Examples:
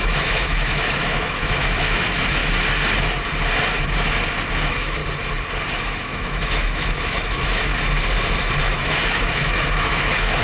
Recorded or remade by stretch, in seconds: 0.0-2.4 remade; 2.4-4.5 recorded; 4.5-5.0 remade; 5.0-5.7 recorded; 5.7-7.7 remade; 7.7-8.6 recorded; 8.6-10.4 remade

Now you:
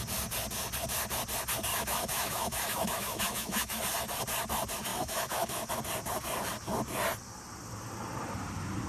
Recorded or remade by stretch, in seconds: 0.0-1.7 recorded; 1.7-3.8 remade; 3.8-4.9 recorded; 4.9-5.7 remade; 5.7-8.9 recorded

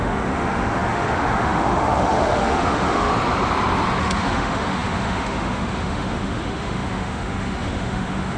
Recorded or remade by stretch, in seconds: 0.0-3.1 remade; 3.1-4.0 recorded; 4.0-8.4 remade

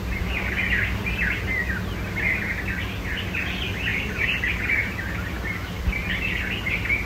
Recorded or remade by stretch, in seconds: 0.0-7.1 recorded

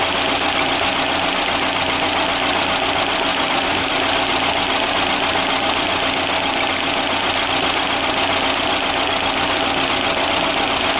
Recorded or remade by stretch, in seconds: 0.0-3.3 recorded; 3.3-3.9 remade; 3.9-11.0 recorded